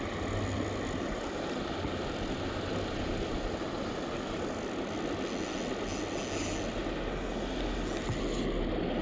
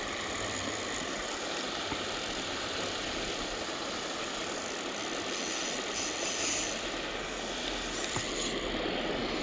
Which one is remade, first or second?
second